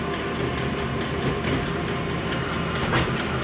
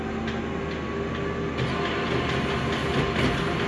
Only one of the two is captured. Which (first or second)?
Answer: second